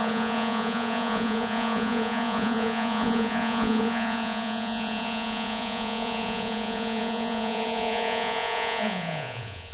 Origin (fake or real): fake